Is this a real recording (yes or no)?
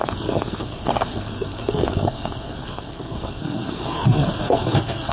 no